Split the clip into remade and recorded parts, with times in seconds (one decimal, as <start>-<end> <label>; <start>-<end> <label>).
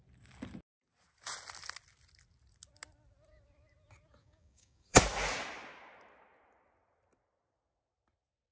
0.0-4.2 recorded; 4.2-5.0 remade; 5.0-8.5 recorded